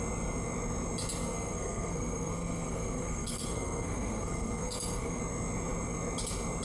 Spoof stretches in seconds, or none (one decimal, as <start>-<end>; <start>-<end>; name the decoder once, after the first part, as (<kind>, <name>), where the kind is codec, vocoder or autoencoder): 1.2-5.2 (codec, SNAC)